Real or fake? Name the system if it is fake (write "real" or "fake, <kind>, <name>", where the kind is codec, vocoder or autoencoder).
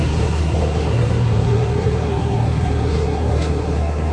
fake, codec, SNAC